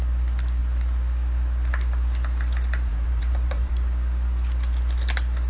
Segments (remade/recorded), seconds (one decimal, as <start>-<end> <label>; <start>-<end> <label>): 0.0-2.9 recorded; 2.9-3.7 remade; 3.7-5.5 recorded